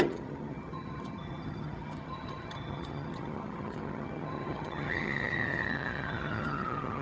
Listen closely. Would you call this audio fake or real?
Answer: fake